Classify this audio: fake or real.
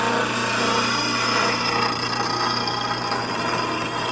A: real